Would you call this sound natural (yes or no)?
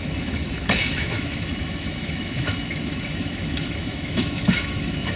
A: no